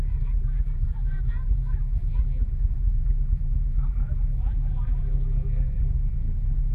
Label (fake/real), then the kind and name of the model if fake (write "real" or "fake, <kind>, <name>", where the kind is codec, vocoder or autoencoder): fake, vocoder, BigVGAN v2